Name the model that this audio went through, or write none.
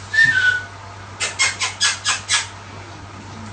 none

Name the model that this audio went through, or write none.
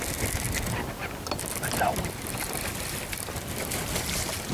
none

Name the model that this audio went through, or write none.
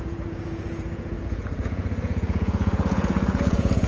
vocoder, Vocos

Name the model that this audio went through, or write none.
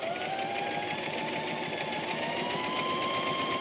none